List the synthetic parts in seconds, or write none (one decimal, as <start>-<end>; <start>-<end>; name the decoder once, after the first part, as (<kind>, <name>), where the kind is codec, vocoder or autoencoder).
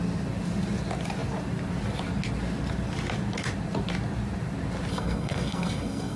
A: 4.9-6.2 (codec, SNAC)